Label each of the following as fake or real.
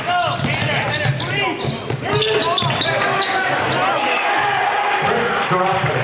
real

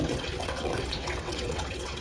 fake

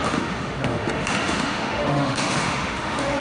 fake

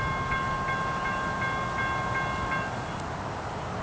real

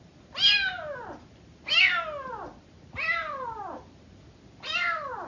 real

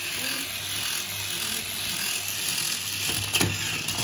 real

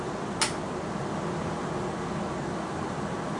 real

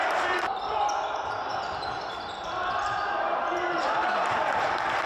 fake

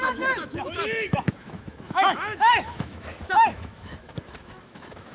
fake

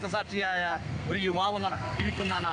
fake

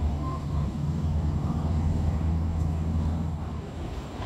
fake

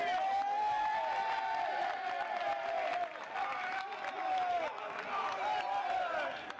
real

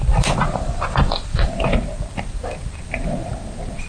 fake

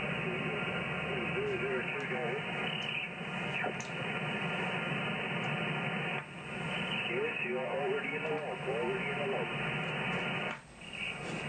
real